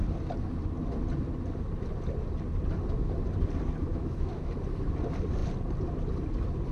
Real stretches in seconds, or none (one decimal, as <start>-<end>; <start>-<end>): 0.0-3.8; 4.5-6.7